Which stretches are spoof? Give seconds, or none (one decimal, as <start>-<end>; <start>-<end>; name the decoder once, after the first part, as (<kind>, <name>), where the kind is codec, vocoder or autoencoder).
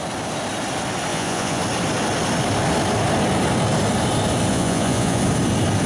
1.1-1.6 (vocoder, Vocos); 4.5-5.2